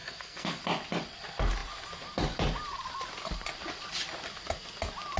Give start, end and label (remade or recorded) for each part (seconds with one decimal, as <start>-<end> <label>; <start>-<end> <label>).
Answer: 0.0-0.6 remade; 0.6-5.2 recorded